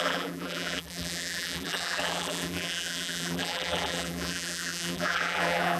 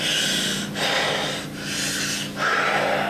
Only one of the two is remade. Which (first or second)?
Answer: first